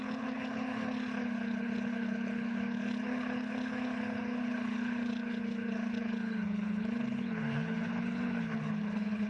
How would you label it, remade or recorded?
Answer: remade